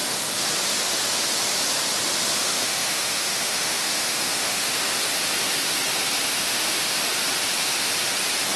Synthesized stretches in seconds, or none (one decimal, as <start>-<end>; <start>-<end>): 2.4-5.0; 6.4-7.0